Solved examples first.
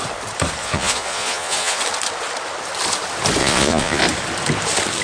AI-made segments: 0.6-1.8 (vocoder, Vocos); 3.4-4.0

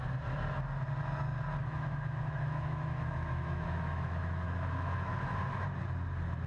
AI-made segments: 1.6-5.4 (autoencoder, DAC-VAE)

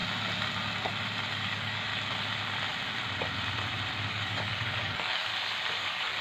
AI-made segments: 1.4-1.9 (codec, DAC); 4.1-5.3; 5.8-6.2

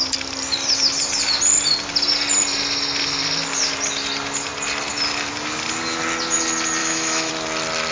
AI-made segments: 6.8-7.3 (autoencoder, DAC-VAE)

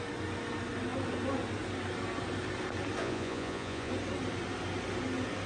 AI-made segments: 3.0-3.9 (vocoder, Vocos)

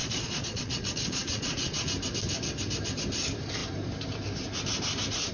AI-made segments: 0.0-1.9 (vocoder, Vocos)